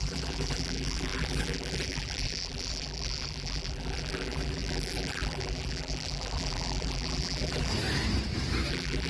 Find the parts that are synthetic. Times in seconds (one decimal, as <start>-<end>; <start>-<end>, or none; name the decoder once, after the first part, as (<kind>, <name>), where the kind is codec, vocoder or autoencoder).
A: 0.0-7.7 (vocoder, BigVGAN v2); 8.7-9.1